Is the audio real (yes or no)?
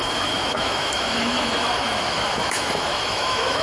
no